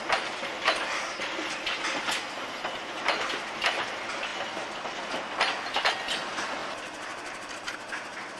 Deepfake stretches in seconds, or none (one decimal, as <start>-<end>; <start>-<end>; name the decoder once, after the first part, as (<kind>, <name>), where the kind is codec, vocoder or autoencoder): none